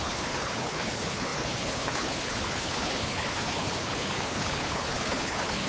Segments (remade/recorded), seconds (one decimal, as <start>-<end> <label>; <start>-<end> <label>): 0.0-5.7 remade